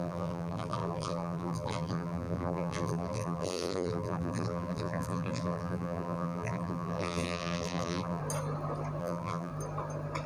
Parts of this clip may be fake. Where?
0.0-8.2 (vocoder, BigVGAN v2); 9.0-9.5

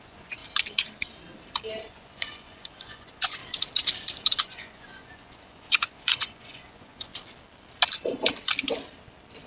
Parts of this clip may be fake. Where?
0.0-0.4 (vocoder, Vocos); 1.9-3.4; 4.4-7.1

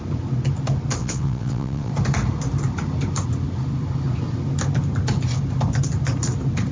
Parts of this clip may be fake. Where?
1.0-1.9 (vocoder, WaveNeXt)